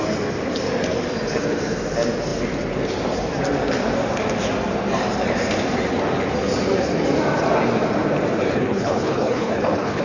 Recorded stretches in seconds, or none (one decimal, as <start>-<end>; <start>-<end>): 0.0-8.5